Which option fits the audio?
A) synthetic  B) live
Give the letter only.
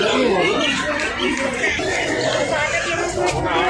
B